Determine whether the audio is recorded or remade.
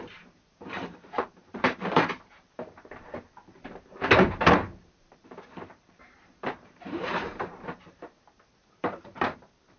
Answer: remade